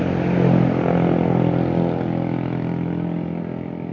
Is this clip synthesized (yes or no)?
no